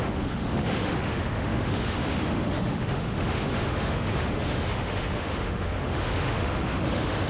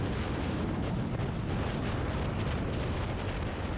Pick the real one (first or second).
second